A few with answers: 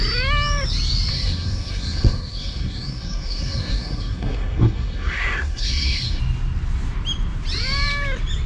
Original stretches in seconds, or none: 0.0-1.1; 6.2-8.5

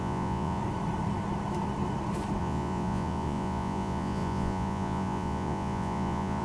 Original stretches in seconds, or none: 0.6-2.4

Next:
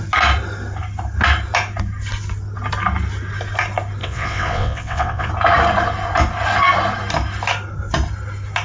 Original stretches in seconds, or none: 0.0-4.0; 5.3-8.6